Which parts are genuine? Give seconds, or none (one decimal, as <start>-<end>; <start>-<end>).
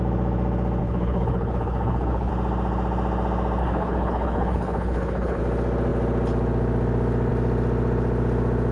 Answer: 0.0-0.8; 2.3-3.6; 5.4-8.7